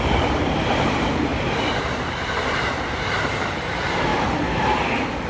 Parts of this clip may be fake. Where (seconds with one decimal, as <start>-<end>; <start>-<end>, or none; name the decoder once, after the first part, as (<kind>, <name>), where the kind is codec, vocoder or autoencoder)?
0.0-1.3 (vocoder, BigVGAN v2); 1.9-4.1